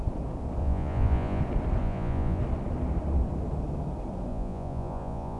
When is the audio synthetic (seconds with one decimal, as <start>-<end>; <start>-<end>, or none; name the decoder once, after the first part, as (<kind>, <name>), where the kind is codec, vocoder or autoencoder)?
0.6-1.4 (vocoder, Vocos); 1.8-2.4; 4.3-5.4